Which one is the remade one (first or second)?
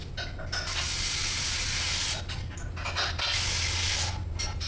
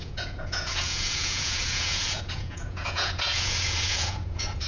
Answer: second